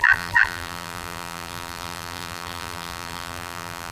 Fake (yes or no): yes